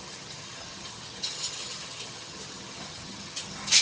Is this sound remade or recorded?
remade